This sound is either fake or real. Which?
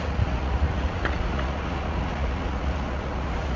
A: fake